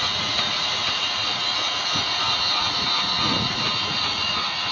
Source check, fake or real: fake